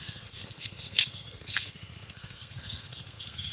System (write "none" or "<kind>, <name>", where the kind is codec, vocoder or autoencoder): codec, SNAC